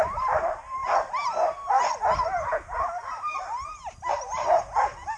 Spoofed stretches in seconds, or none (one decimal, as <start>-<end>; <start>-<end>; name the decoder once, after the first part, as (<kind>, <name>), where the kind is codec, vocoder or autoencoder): 0.0-0.8 (vocoder, BigVGAN v2); 3.4-5.2